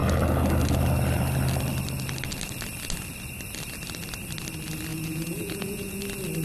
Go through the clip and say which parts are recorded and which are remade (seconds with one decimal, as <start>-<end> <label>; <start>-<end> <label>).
0.0-4.9 recorded; 4.9-6.0 remade; 6.0-6.4 recorded